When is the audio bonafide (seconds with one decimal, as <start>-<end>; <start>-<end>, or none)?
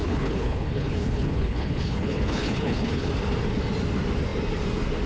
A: 3.1-5.1